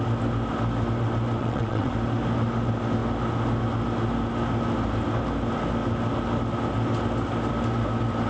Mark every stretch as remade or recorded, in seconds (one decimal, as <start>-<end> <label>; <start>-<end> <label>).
0.0-1.4 recorded; 1.4-1.9 remade; 1.9-8.3 recorded